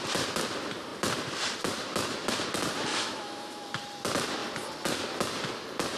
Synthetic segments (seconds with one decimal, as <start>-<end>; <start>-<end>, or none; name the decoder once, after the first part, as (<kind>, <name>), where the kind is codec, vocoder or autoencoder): 2.9-3.7 (autoencoder, DAC-VAE)